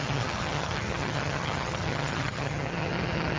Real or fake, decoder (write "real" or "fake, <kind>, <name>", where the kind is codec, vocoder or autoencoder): fake, vocoder, HiFi-GAN